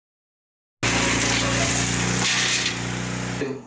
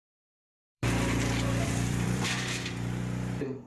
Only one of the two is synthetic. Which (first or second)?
second